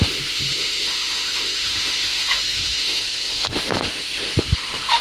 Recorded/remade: remade